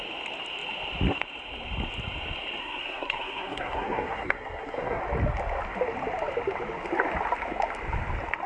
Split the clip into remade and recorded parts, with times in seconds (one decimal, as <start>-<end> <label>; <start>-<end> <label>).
0.0-2.6 recorded; 2.6-5.0 remade; 5.0-8.5 recorded